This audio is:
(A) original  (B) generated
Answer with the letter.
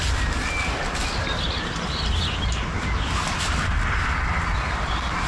A